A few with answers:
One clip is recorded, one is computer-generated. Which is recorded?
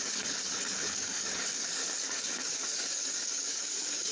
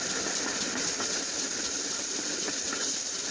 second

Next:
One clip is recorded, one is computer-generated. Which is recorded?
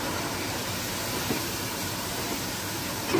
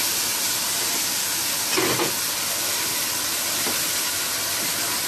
second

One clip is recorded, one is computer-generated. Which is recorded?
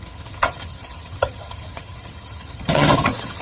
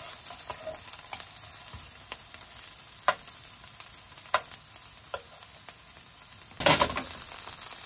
second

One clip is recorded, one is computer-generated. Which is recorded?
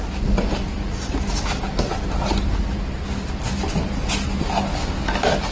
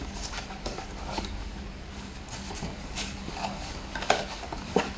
first